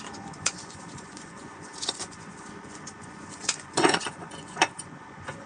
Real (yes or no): no